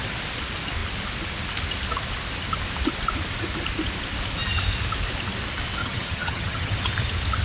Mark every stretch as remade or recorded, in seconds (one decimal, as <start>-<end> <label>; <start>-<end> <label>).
0.0-5.8 recorded; 5.8-6.7 remade; 6.7-7.4 recorded